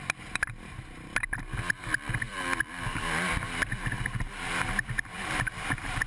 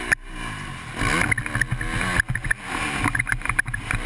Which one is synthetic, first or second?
first